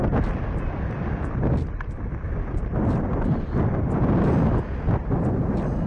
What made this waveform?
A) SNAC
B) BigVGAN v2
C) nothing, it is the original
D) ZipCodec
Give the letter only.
C